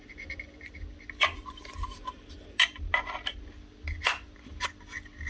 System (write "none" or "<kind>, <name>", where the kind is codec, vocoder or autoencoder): none